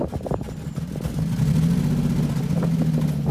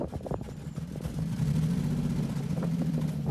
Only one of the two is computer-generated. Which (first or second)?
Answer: second